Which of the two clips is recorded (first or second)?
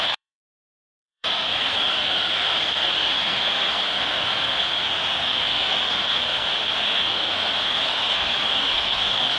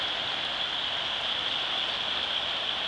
second